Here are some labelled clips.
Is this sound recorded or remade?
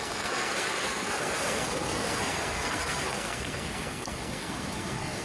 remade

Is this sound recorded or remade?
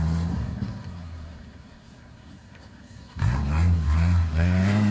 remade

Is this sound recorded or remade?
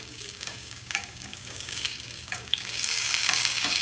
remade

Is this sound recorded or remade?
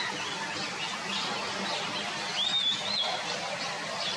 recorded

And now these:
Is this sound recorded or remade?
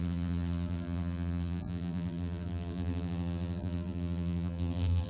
remade